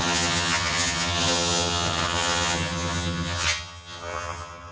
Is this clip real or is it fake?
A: fake